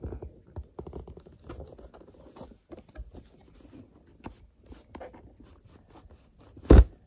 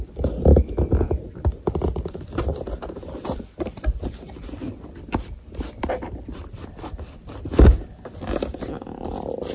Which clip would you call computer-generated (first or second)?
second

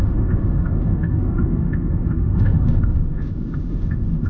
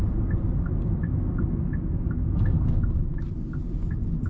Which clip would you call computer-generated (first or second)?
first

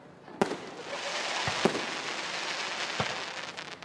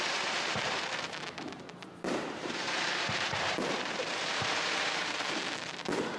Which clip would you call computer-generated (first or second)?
second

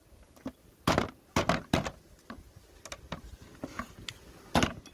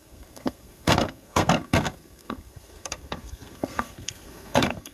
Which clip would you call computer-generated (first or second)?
second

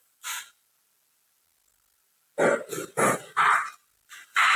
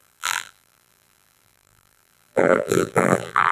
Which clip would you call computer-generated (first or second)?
second